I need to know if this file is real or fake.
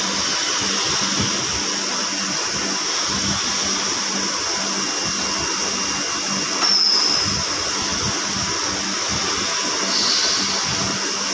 real